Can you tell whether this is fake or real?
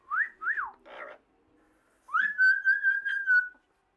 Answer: real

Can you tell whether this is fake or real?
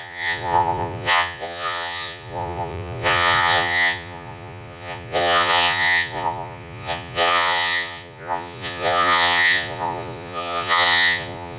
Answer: fake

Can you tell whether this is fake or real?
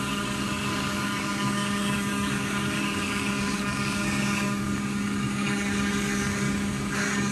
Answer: fake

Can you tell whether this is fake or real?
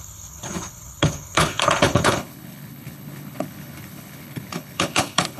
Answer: fake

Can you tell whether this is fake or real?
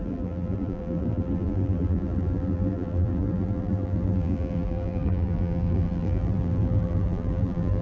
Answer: fake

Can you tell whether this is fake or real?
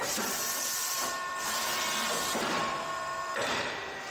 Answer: fake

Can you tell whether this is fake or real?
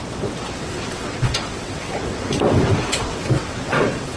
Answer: fake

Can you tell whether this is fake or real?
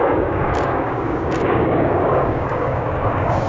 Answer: fake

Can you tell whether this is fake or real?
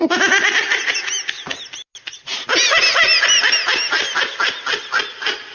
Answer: real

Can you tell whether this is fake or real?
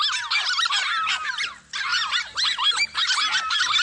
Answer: real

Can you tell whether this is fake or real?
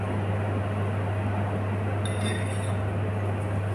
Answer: real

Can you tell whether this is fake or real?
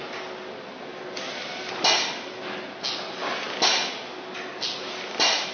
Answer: real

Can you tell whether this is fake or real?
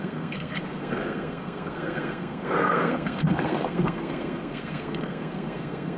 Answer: fake